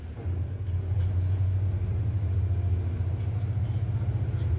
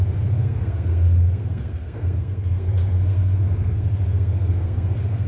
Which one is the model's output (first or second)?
second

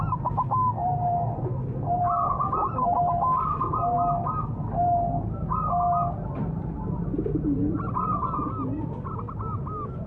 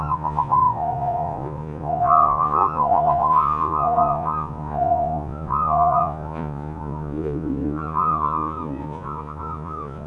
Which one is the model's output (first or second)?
second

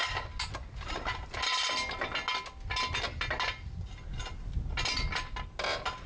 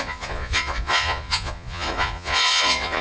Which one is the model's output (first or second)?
second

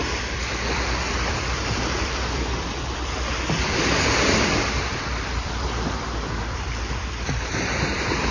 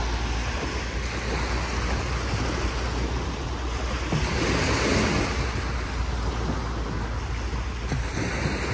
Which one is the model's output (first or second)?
first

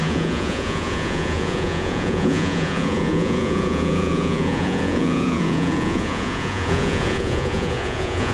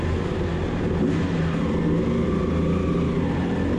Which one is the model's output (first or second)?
first